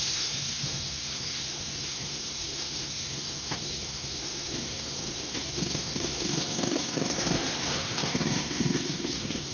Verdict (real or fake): fake